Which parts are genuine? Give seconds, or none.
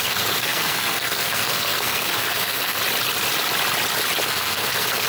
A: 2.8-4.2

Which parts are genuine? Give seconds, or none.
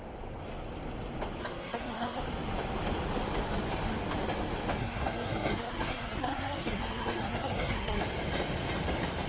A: 0.0-1.4; 2.2-4.8; 8.0-9.3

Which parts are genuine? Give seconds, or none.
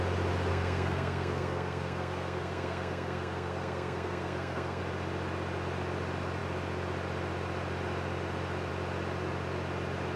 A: 0.0-0.5; 4.8-10.2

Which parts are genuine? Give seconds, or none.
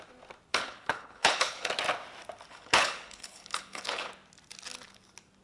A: 0.0-0.5; 1.7-2.5; 4.1-5.4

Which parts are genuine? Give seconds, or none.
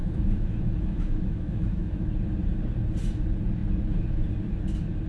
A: 2.1-5.1